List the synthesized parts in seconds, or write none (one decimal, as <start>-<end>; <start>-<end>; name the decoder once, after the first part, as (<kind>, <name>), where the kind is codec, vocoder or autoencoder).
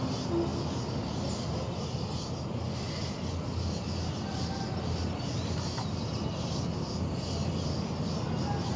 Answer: none